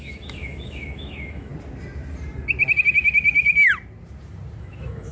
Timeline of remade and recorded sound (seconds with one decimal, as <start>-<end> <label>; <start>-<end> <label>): 0.0-1.5 remade; 1.5-4.6 recorded; 4.6-5.1 remade